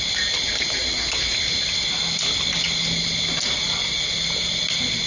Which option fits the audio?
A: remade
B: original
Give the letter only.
B